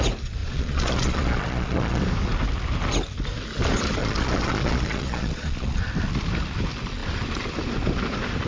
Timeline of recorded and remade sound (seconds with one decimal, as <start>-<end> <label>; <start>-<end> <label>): 0.0-0.4 recorded; 0.4-2.0 remade; 2.0-4.0 recorded; 4.0-5.8 remade; 5.8-8.5 recorded